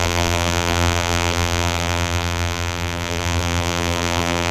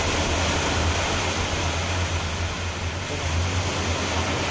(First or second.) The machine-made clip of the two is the first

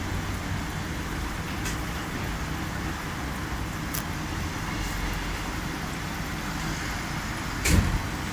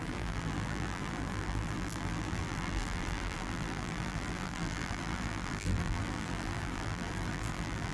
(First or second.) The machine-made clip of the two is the second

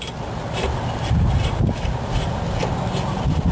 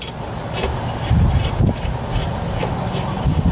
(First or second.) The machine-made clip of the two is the first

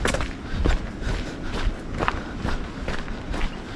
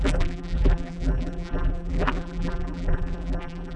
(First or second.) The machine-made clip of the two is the second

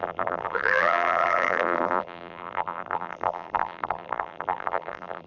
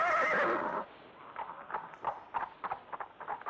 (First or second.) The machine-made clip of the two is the first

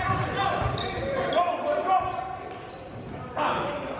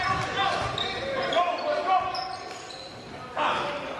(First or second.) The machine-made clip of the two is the first